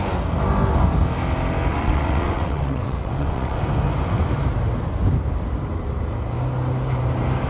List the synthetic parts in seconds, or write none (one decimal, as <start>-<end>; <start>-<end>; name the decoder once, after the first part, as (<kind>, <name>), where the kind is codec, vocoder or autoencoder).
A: 1.7-3.6 (vocoder, WaveNeXt)